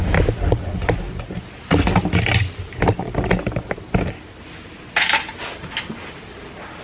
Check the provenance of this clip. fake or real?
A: real